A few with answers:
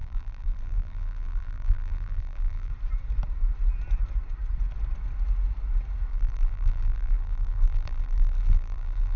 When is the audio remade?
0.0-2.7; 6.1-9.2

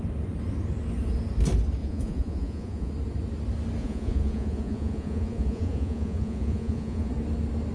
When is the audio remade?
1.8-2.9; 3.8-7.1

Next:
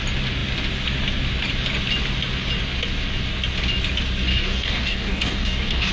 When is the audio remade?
4.3-5.9

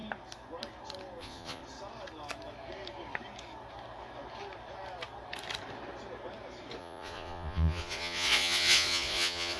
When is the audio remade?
1.2-1.6; 6.8-9.6

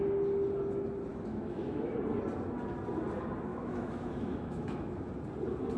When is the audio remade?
1.1-1.9; 3.5-5.1

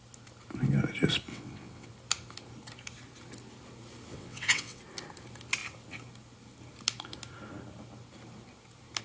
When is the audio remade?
1.3-1.9; 4.1-4.8